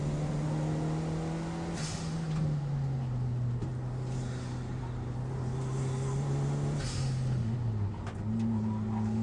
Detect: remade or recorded recorded